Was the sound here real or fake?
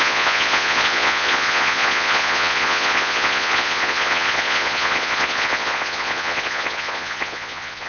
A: fake